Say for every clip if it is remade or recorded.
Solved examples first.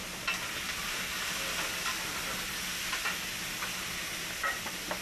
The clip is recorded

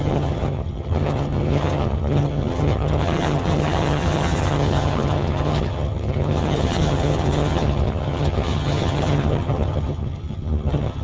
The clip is remade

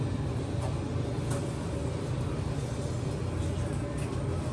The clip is recorded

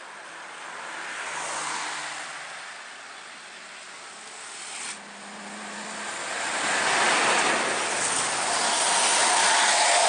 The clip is recorded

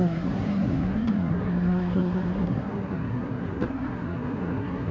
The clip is remade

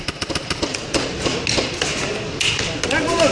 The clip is recorded